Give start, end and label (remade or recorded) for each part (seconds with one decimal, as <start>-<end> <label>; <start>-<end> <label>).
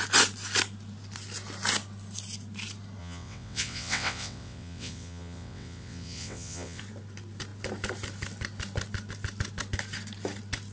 0.0-3.0 recorded; 3.0-6.8 remade; 6.8-10.7 recorded